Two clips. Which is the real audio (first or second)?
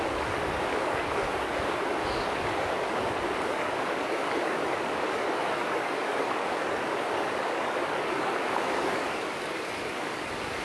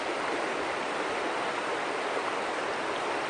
second